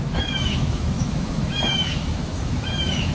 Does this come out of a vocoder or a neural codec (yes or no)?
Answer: yes